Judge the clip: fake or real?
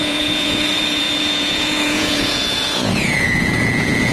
fake